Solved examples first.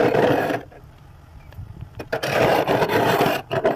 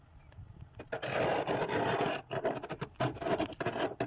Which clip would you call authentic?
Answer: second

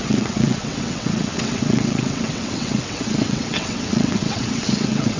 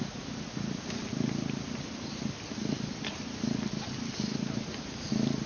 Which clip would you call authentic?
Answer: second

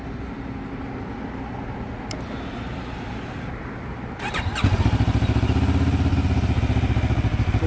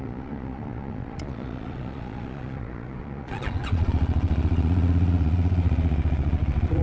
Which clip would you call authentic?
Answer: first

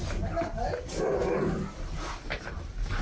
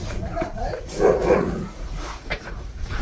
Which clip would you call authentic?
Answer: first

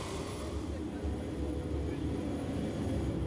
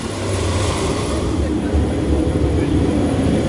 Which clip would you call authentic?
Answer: first